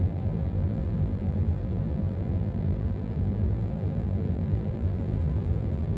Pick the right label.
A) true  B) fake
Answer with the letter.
B